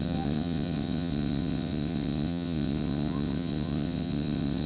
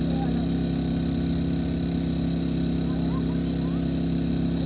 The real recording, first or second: second